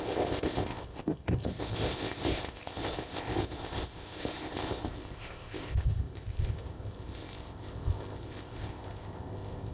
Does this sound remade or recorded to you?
remade